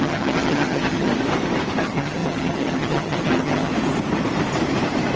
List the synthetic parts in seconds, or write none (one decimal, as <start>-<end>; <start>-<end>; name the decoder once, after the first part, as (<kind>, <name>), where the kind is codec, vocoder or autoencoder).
0.0-1.1 (vocoder, HiFi-GAN); 1.8-3.7